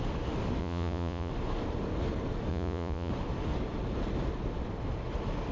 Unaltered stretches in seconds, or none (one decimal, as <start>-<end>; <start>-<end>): 0.0-0.6; 1.3-2.5; 3.1-5.5